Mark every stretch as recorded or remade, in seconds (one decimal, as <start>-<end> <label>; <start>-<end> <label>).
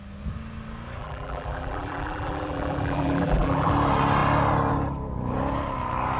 0.0-1.0 recorded; 1.0-3.7 remade; 3.7-6.2 recorded